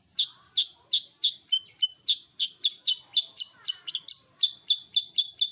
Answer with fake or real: real